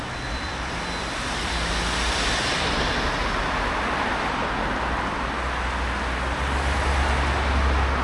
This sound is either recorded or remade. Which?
recorded